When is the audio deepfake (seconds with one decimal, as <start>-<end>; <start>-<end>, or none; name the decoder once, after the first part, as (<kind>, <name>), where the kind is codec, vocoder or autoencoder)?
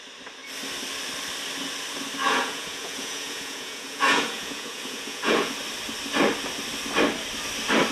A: 2.2-5.5 (vocoder, Vocos)